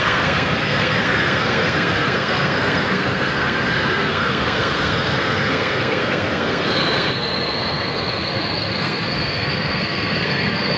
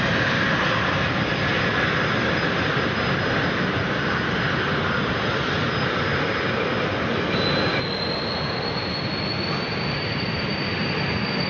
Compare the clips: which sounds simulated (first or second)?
first